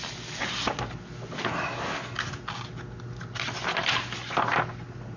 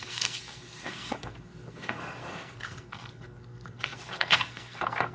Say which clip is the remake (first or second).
second